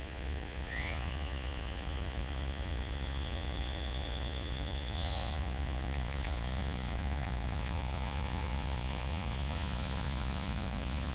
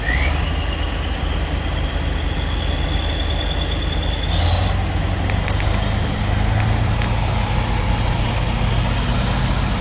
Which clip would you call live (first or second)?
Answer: second